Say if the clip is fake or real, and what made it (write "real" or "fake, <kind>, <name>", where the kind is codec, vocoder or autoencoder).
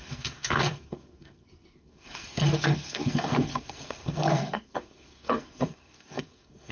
fake, codec, SNAC